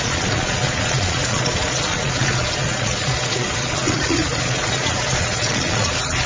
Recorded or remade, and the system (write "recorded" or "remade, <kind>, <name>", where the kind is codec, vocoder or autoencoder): remade, vocoder, Vocos